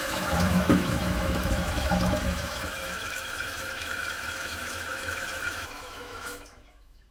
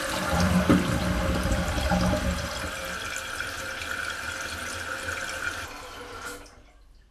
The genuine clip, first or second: second